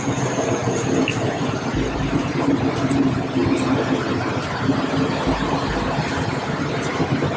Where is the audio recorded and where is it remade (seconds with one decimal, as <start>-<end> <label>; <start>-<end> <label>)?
0.0-7.4 recorded